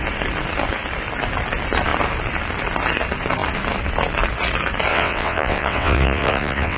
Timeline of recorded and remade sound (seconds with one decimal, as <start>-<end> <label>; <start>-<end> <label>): 0.0-4.9 recorded; 4.9-6.8 remade